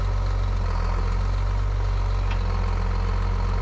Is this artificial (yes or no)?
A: no